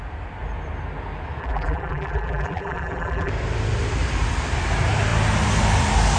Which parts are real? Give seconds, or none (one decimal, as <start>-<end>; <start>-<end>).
0.0-1.4; 3.3-6.2